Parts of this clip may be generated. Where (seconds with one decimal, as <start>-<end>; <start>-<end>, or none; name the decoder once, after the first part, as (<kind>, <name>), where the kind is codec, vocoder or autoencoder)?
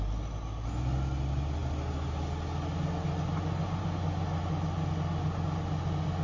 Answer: none